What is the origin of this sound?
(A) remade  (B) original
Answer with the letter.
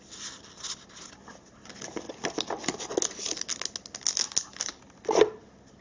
B